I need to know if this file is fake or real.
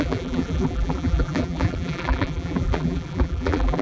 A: fake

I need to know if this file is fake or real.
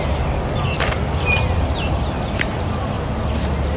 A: real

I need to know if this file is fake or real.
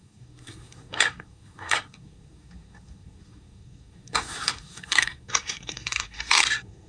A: fake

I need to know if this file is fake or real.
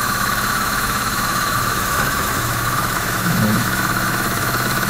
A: fake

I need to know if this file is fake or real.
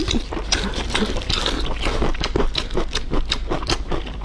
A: real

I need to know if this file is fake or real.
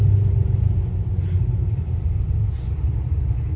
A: real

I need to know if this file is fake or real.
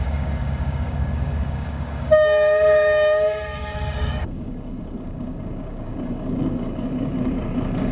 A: fake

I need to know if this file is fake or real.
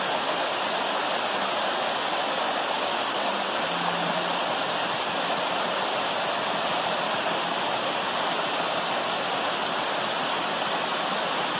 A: real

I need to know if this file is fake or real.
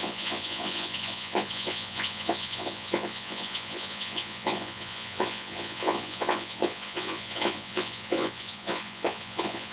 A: fake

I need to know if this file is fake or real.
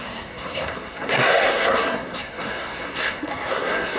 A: fake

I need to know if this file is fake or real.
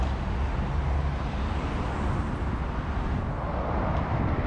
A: real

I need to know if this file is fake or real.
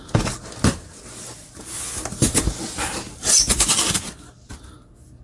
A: real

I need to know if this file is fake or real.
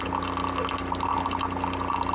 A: real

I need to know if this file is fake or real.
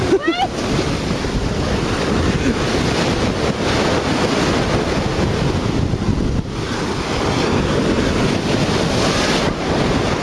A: real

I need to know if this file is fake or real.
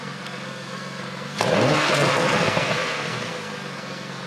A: fake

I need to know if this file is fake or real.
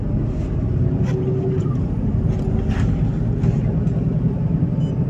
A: real